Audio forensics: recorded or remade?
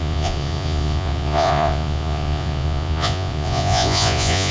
remade